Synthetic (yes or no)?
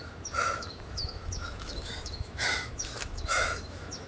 yes